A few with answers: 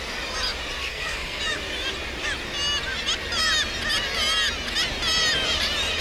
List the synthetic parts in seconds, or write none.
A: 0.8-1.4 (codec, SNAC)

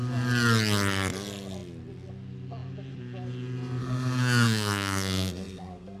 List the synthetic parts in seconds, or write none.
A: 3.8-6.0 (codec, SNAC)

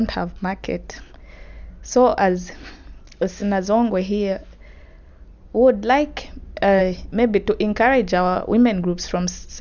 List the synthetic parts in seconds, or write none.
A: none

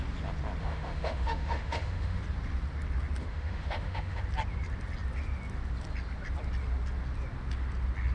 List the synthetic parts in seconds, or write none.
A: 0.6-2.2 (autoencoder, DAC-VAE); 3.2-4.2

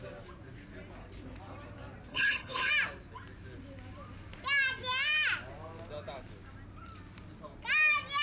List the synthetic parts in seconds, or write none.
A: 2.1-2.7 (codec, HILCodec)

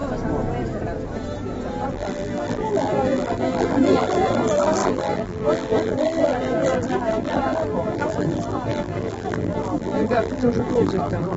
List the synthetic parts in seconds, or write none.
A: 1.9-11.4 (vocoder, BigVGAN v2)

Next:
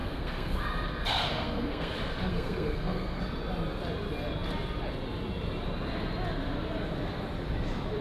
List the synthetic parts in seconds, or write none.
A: 0.0-0.6 (codec, SNAC); 1.1-1.9; 2.3-3.2

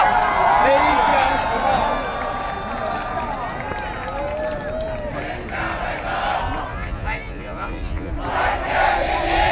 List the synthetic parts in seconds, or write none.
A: 6.7-8.1 (vocoder, Vocos)